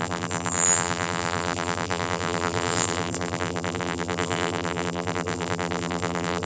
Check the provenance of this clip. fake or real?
fake